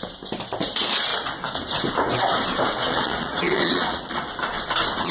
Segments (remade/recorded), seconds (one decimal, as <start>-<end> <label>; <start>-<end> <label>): 0.0-2.8 recorded; 2.8-4.3 remade; 4.3-5.1 recorded